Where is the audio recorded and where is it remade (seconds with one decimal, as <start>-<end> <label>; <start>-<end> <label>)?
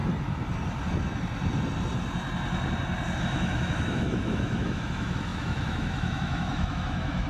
0.0-3.2 recorded; 3.2-7.3 remade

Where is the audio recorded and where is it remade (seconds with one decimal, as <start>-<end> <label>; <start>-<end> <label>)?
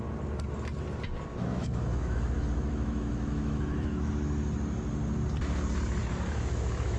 0.0-1.3 recorded; 1.3-4.1 remade; 4.1-6.0 recorded; 6.0-7.0 remade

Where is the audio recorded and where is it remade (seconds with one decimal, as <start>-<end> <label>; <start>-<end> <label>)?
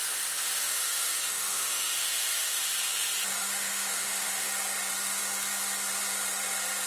0.0-0.7 recorded; 0.7-2.6 remade; 2.6-3.3 recorded; 3.3-4.5 remade; 4.5-6.9 recorded